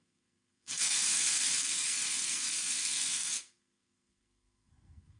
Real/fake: fake